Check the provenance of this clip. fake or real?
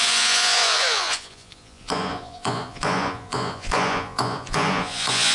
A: fake